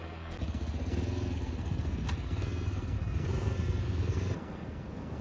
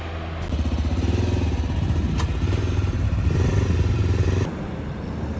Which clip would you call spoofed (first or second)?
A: first